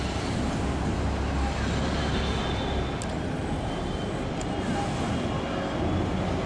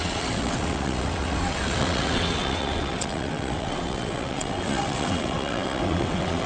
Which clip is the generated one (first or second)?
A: second